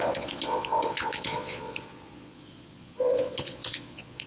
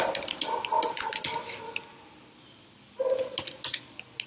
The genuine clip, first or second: second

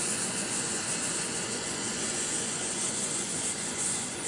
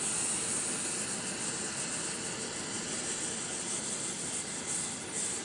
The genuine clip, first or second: second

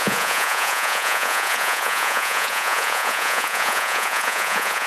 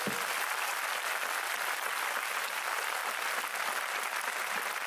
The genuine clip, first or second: second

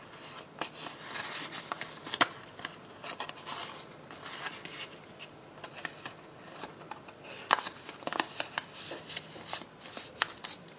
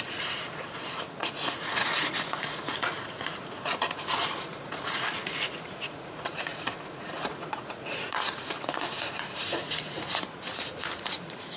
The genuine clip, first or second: first